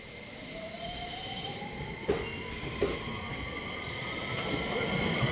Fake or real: fake